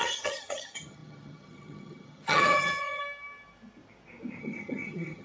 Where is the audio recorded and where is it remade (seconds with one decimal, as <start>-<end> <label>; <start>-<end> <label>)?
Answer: 0.0-3.0 remade; 3.0-4.4 recorded; 4.4-5.2 remade